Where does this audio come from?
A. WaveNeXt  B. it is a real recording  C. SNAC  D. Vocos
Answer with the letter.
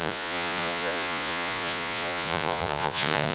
D